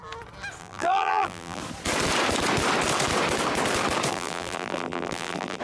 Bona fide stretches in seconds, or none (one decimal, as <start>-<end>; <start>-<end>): 0.0-0.6; 1.6-4.1